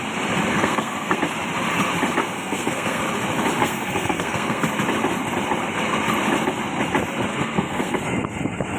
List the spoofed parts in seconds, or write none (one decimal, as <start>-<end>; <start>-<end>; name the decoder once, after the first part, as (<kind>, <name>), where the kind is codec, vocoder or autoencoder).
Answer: 0.5-1.2 (codec, SNAC); 2.2-3.0; 3.6-4.6; 7.3-8.0

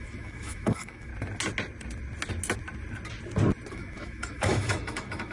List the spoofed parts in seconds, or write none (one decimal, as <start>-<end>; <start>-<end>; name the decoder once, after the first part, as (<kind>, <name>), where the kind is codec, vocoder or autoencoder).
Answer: 0.0-1.1 (autoencoder, DAC-VAE); 3.7-5.3

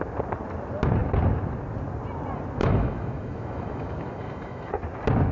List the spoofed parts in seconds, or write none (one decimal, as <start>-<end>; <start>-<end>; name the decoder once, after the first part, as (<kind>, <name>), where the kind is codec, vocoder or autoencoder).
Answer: 2.6-4.7 (autoencoder, DAC-VAE)

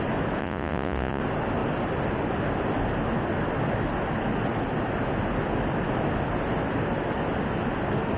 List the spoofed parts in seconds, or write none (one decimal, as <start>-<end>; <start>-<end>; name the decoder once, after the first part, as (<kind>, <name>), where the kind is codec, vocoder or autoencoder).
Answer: 0.4-1.2 (vocoder, Vocos)

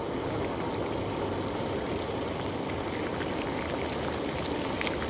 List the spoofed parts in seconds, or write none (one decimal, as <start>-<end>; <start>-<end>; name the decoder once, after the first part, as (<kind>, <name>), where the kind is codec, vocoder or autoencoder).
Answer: none

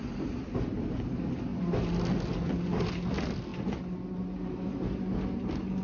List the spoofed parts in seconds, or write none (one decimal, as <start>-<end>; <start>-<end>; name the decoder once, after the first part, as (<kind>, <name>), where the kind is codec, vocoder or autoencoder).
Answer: none

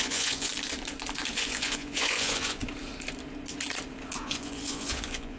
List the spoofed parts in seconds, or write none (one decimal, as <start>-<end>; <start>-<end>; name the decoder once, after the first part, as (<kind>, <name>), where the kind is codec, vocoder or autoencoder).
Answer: 0.0-0.5 (vocoder, Vocos); 1.3-2.6; 4.2-5.4